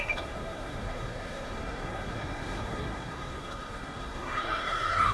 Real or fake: fake